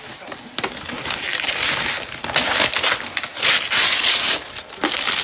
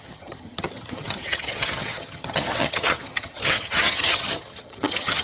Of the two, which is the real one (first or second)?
first